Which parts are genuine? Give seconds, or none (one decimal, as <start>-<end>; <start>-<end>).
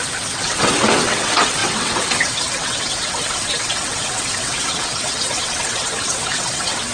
none